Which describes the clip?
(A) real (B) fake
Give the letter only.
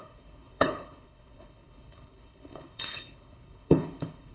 B